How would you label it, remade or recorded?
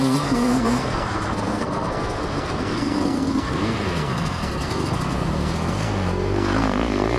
remade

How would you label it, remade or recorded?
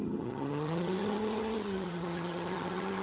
remade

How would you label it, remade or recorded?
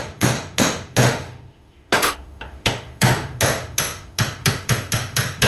remade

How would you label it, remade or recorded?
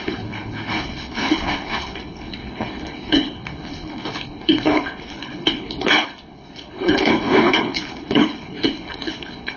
remade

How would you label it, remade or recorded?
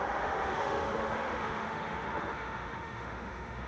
remade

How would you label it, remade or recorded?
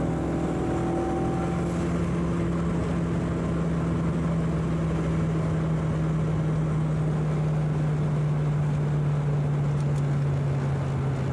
recorded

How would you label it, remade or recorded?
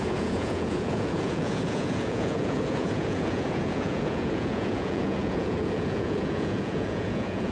remade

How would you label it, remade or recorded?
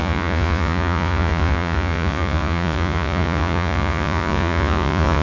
remade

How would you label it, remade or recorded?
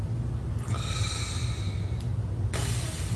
recorded